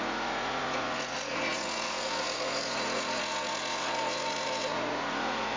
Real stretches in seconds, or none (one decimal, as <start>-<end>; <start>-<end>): none